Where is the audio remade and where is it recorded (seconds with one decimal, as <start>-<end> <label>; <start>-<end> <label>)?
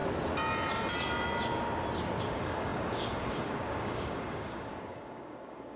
0.0-2.2 recorded; 2.2-5.8 remade